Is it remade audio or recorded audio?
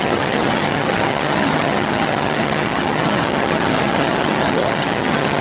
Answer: remade